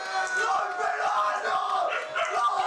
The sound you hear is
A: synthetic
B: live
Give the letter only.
B